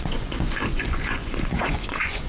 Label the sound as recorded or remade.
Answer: remade